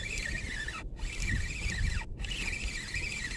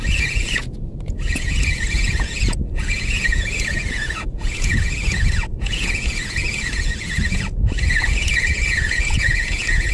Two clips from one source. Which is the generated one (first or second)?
second